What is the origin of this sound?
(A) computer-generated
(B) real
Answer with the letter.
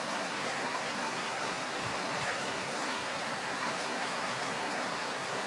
A